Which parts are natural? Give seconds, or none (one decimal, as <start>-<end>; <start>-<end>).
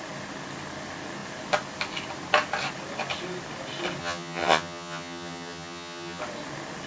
0.0-4.0; 6.2-6.9